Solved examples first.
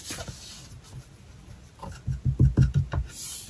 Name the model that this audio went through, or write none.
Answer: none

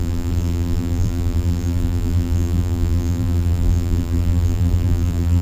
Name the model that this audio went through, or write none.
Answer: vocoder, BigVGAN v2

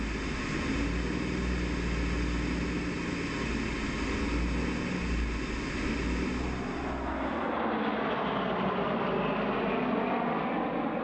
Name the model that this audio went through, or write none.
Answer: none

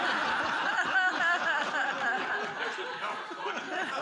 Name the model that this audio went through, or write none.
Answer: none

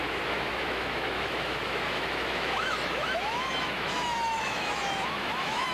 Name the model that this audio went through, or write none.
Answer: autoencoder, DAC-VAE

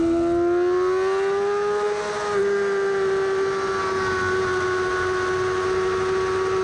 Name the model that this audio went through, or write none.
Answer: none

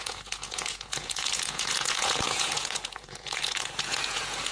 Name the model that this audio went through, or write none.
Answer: vocoder, Vocos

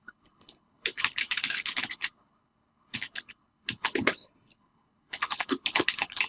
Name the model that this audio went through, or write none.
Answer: codec, HILCodec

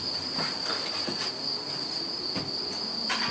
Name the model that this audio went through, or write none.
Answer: none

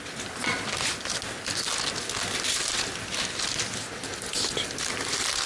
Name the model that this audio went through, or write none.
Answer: none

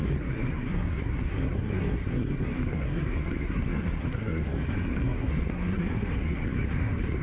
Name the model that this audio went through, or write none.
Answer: codec, SNAC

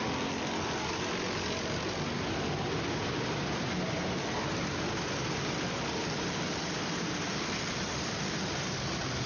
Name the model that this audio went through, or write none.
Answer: none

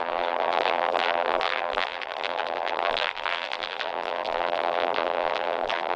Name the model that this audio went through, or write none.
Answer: vocoder, BigVGAN v2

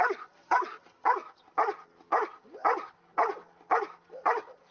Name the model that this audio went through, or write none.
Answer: none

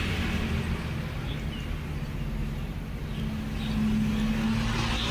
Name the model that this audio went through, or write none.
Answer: none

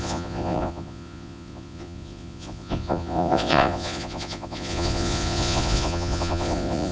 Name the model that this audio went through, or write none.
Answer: vocoder, Vocos